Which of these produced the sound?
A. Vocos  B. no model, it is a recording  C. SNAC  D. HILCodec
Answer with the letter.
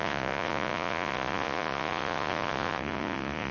A